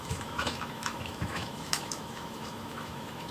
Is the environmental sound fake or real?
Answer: fake